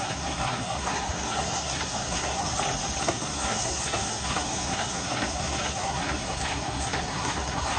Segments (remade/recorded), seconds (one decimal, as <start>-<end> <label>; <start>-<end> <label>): 0.0-2.5 remade; 2.5-3.0 recorded; 3.0-7.8 remade

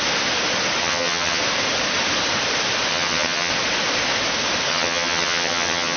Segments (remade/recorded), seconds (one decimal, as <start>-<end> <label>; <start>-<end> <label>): 0.0-0.8 recorded; 0.8-1.4 remade; 1.4-2.9 recorded; 2.9-3.5 remade; 3.5-4.7 recorded; 4.7-6.0 remade

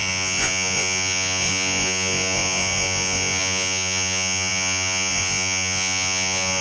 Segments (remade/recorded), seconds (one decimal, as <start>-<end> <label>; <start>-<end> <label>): 0.0-6.6 remade